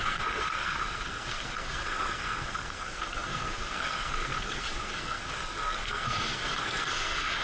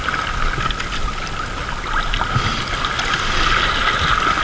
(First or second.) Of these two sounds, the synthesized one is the first